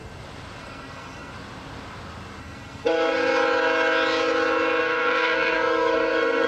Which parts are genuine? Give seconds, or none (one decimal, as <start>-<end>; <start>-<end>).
0.0-0.6; 1.3-2.4; 3.3-4.8